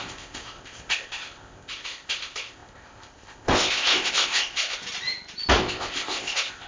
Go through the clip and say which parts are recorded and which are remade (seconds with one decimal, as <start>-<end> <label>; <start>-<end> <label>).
0.0-4.8 remade; 4.8-5.6 recorded; 5.6-6.7 remade